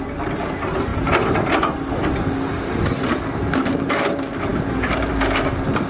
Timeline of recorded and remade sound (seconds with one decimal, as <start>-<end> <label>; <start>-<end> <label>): 0.0-5.9 recorded